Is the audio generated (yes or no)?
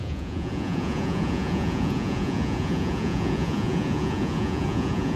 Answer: yes